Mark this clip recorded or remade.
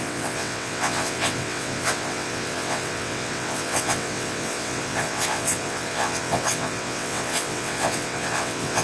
remade